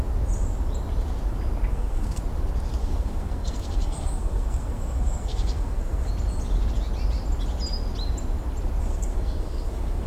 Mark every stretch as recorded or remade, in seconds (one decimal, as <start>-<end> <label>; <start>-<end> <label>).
0.0-1.7 recorded; 1.7-2.2 remade; 2.2-2.8 recorded; 2.8-6.1 remade; 6.1-8.8 recorded; 8.8-10.1 remade